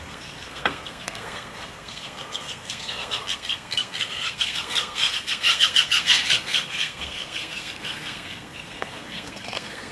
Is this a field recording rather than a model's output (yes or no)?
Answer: no